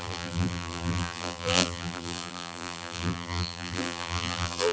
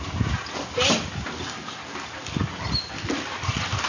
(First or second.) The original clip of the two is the second